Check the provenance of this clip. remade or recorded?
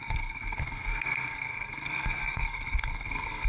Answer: remade